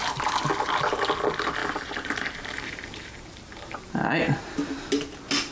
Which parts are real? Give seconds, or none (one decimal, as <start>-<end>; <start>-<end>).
0.0-1.6; 4.9-5.5